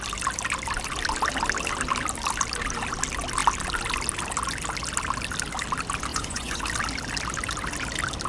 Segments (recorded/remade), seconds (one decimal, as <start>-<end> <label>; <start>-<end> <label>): 0.0-6.1 recorded; 6.1-6.6 remade; 6.6-8.3 recorded